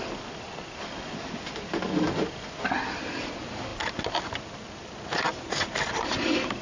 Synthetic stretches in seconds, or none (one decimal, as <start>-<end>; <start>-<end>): none